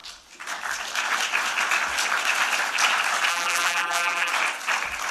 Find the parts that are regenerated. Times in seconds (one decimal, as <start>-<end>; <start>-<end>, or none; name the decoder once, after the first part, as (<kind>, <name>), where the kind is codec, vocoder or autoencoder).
3.3-4.3 (vocoder, BigVGAN v2)